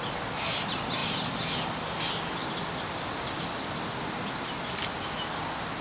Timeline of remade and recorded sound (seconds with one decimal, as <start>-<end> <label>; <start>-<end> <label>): 0.0-5.8 recorded